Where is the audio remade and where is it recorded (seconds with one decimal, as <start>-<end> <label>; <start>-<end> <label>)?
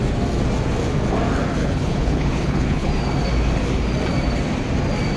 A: 0.0-1.6 recorded; 1.6-2.9 remade; 2.9-5.2 recorded